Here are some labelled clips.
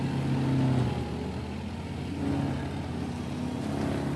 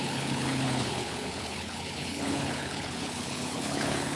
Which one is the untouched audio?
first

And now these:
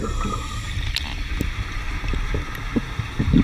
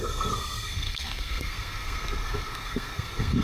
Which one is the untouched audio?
first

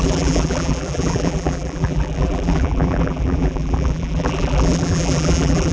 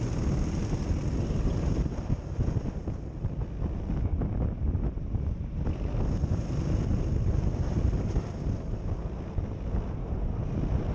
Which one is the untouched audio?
second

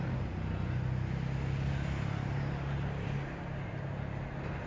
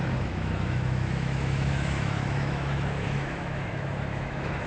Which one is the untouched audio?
first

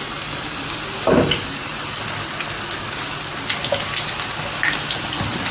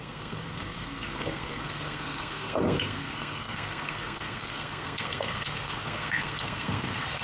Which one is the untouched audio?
first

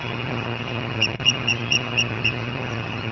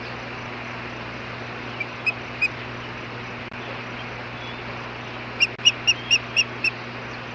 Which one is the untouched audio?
second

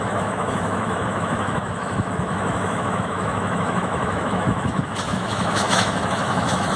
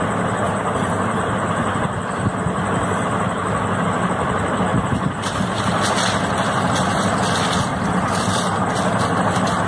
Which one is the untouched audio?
second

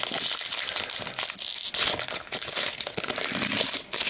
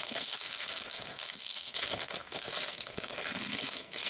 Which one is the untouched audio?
first